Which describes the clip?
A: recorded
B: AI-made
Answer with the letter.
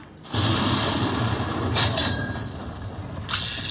A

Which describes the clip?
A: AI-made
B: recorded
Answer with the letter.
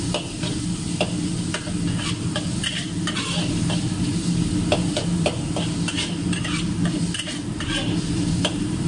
B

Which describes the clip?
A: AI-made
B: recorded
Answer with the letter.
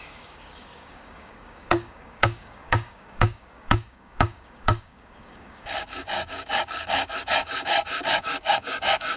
A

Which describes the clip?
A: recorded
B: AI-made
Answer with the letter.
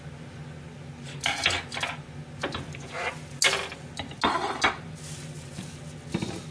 A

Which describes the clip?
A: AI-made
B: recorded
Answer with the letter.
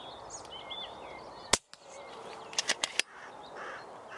B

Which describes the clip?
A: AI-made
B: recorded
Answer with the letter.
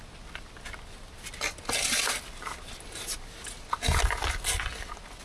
B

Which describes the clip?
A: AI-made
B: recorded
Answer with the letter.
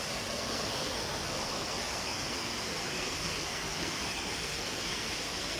A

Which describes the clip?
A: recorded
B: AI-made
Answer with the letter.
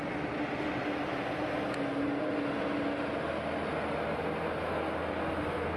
A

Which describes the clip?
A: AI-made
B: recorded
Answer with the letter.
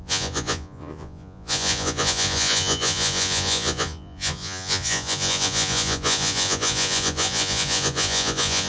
A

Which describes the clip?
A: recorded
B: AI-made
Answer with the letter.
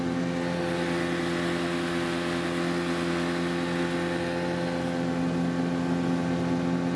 A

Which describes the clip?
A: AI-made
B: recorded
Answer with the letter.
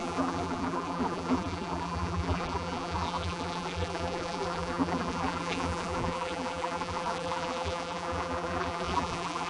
A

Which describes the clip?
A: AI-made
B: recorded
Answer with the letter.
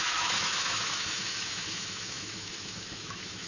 A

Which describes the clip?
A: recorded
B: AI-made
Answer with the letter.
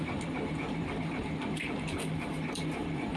B